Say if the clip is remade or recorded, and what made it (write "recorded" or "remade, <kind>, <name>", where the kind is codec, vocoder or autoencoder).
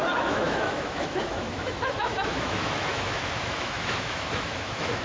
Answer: remade, autoencoder, DAC-VAE